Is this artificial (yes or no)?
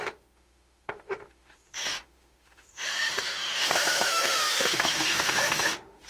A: yes